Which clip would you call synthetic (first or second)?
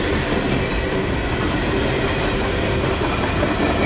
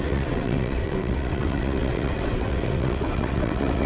second